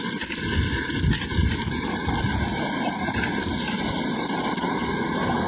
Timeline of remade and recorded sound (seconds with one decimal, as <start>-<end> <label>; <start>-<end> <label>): 0.0-1.3 recorded; 1.3-4.6 remade; 4.6-5.5 recorded